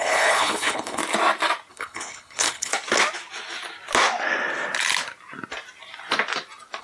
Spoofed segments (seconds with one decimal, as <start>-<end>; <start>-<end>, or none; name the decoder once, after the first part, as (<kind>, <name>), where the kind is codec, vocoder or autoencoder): 0.0-1.0 (codec, HILCodec); 1.7-2.7